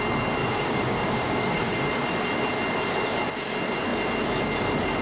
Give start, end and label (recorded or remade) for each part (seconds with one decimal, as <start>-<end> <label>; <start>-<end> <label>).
0.0-0.4 recorded; 0.4-1.8 remade; 1.8-5.0 recorded

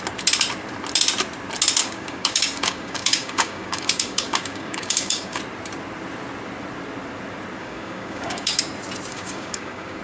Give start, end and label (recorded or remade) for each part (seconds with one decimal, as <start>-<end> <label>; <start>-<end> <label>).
0.0-1.8 recorded; 1.8-5.4 remade; 5.4-7.6 recorded; 7.6-8.6 remade; 8.6-9.1 recorded; 9.1-10.0 remade

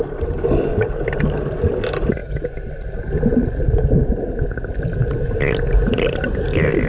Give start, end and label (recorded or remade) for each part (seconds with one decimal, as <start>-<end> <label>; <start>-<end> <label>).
0.0-6.9 recorded

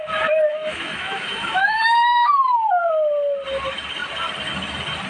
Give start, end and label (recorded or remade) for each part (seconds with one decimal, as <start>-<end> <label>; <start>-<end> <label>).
0.0-0.5 recorded; 0.5-2.9 remade; 2.9-5.1 recorded

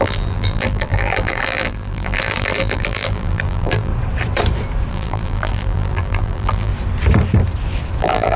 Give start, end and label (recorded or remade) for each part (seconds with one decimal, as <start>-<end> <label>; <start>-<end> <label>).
0.0-3.9 remade; 3.9-4.9 recorded; 4.9-6.7 remade; 6.7-8.0 recorded; 8.0-8.4 remade

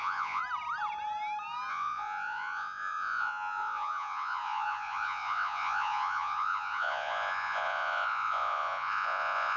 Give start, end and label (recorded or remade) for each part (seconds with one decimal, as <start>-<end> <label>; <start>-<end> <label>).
0.0-0.4 remade; 0.4-1.7 recorded; 1.7-9.6 remade

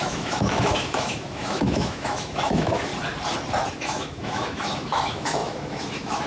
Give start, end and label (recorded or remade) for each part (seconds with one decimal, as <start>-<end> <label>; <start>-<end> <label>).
0.0-2.9 remade; 2.9-3.7 recorded; 3.7-6.3 remade

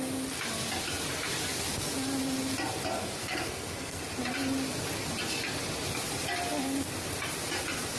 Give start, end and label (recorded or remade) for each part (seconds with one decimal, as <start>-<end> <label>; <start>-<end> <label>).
0.0-3.2 recorded; 3.2-4.0 remade; 4.0-8.0 recorded